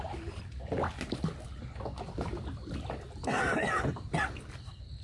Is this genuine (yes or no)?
yes